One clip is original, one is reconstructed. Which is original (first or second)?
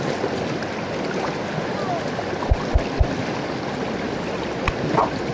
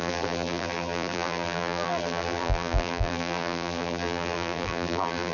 first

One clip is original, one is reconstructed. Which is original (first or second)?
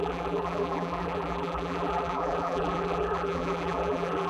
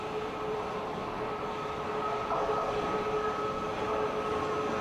second